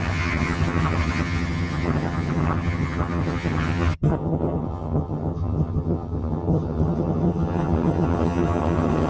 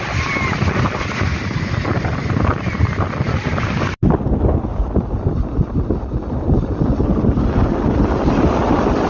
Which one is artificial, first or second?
first